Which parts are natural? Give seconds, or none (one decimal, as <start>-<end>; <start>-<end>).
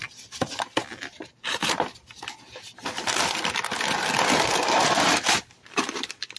0.0-1.0; 1.6-5.4